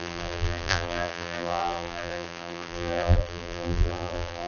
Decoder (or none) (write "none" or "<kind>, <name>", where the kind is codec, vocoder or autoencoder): vocoder, BigVGAN v2